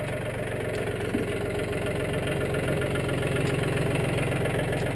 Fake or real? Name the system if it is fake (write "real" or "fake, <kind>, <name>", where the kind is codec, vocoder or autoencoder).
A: real